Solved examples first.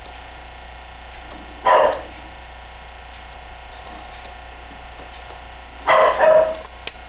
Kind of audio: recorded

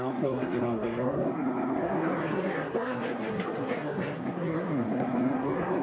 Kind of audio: remade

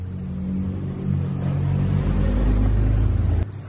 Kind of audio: recorded